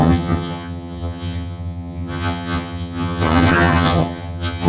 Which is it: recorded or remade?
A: remade